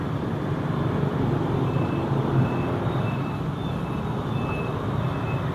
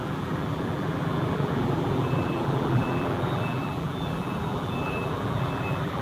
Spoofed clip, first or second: second